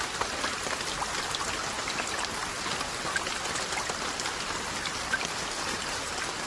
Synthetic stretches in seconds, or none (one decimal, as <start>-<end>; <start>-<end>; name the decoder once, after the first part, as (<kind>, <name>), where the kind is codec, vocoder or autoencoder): none